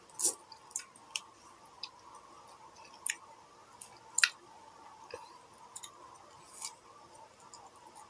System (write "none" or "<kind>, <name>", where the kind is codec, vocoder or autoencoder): none